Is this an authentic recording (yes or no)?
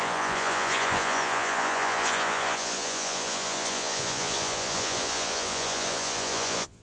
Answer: no